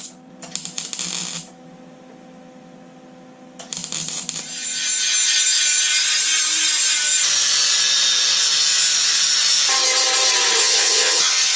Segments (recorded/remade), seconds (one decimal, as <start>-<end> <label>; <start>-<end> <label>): 0.0-10.6 recorded; 10.6-11.6 remade